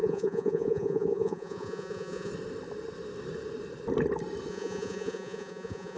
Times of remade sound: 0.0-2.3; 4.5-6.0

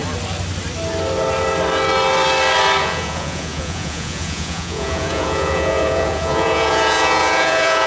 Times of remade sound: 2.8-7.9